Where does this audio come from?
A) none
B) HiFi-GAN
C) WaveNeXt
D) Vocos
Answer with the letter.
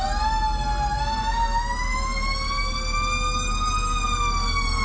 A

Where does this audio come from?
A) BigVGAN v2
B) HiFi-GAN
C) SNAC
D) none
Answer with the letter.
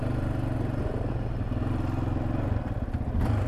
D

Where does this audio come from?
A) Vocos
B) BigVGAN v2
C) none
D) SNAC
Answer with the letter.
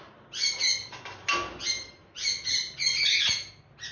C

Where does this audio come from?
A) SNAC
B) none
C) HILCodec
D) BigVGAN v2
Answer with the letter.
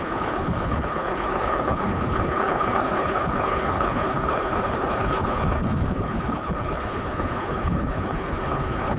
C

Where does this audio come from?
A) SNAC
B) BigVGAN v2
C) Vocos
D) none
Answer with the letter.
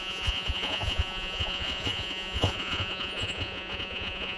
C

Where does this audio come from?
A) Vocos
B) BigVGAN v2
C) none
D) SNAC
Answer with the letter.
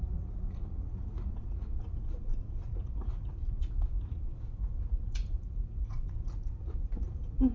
A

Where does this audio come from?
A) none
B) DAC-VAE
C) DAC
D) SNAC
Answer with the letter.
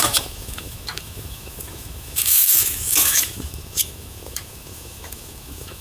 B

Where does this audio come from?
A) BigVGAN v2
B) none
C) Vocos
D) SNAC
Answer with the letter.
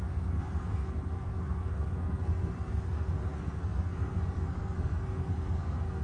D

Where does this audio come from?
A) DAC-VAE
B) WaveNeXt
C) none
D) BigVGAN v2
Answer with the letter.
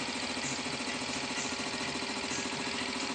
C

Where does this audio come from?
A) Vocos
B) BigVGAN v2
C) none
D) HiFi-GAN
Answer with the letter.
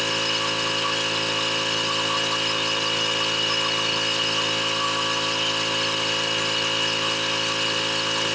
C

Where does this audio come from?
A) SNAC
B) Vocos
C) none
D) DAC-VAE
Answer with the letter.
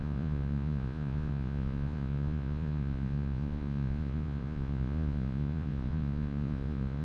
B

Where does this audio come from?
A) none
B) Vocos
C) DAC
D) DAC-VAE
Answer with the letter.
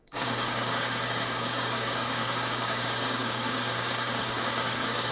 C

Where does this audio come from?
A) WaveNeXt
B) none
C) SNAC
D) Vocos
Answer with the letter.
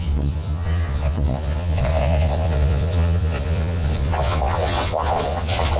D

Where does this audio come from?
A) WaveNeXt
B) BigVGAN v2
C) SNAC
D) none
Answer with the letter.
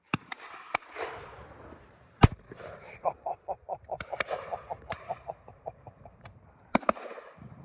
B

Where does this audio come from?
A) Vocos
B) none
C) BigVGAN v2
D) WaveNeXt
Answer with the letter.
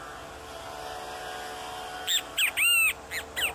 B